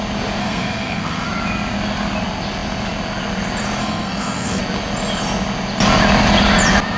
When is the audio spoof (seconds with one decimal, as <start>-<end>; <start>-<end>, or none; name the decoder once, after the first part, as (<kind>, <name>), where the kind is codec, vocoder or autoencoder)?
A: 0.4-1.3 (codec, SNAC); 3.8-4.6